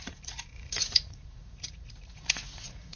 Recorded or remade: remade